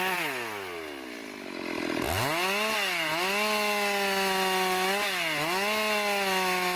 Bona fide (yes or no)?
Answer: yes